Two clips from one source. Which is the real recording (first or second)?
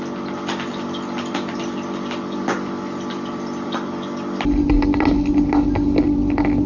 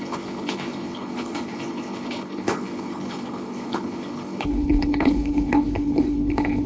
first